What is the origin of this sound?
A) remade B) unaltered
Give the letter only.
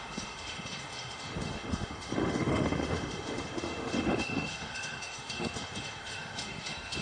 A